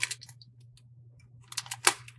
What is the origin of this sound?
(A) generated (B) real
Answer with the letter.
B